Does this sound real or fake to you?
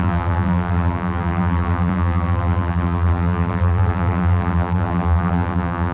fake